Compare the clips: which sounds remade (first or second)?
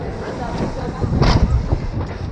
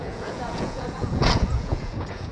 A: second